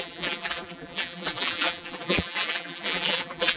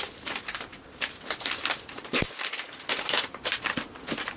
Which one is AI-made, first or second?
first